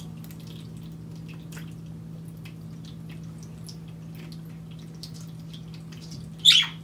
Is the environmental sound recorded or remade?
recorded